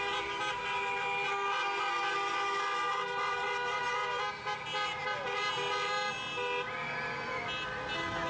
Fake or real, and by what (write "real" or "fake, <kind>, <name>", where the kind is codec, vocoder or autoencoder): real